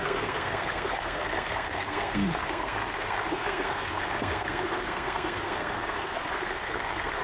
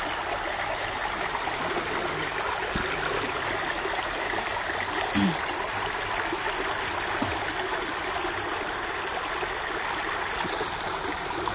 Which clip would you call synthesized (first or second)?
first